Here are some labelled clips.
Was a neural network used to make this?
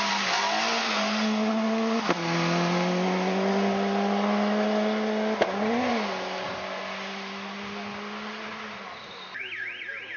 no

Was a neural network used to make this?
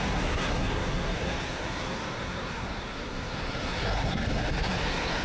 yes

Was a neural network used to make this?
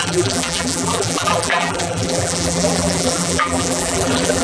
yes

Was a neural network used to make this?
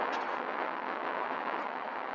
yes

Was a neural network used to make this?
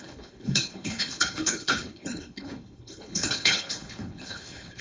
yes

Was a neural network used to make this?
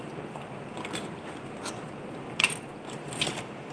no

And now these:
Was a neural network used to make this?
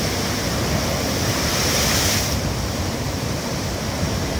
yes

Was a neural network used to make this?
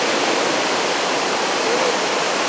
no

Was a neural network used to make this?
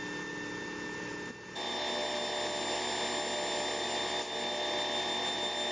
no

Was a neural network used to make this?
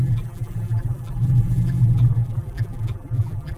yes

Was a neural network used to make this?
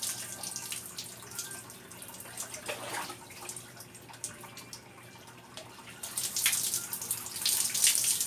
no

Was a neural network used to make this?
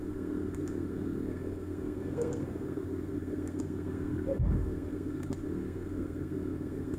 yes